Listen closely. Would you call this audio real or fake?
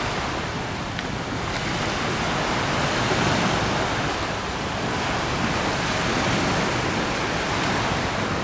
real